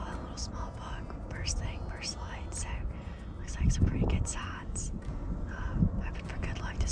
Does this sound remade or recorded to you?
remade